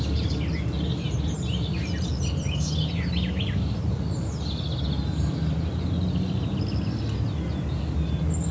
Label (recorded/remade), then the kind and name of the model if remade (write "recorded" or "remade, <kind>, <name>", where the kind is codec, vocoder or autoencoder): recorded